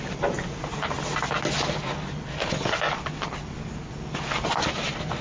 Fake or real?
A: real